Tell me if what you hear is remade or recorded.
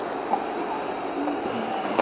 recorded